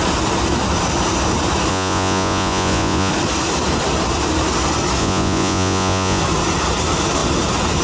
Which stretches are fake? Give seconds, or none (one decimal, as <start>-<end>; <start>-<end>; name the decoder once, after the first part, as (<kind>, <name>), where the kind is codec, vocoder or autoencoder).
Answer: 1.7-3.1 (vocoder, Vocos); 5.0-6.2